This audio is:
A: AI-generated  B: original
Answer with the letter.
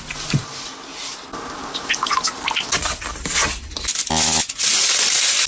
B